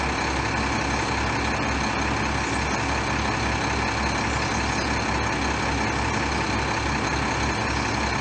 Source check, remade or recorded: recorded